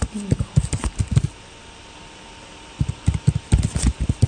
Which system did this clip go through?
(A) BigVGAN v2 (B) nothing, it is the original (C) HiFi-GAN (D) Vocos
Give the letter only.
B